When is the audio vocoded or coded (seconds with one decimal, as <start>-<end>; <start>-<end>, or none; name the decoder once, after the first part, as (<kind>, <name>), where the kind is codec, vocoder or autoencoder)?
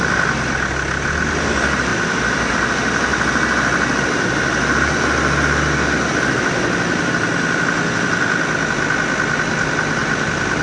1.9-2.5 (vocoder, BigVGAN v2); 10.0-10.6